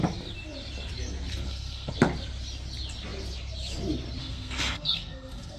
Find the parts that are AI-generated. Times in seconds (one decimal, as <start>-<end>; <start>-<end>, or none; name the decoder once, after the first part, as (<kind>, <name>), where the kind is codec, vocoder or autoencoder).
1.3-1.9 (codec, SNAC); 4.2-5.6